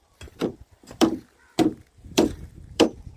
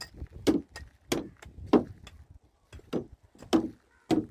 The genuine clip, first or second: second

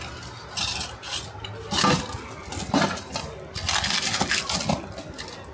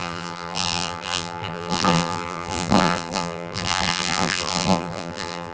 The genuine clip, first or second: first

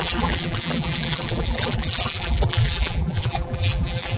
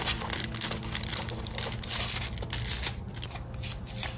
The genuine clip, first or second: second